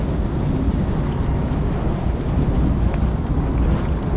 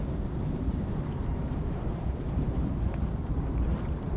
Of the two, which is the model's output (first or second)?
second